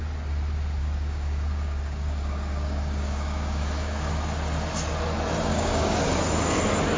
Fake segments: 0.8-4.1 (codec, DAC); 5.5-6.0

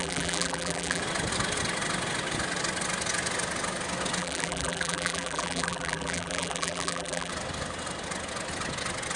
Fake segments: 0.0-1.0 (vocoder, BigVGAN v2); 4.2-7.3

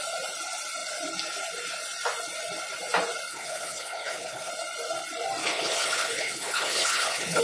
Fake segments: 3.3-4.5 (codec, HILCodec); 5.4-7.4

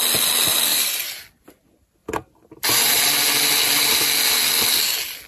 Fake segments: 0.7-1.4 (vocoder, BigVGAN v2); 2.0-3.0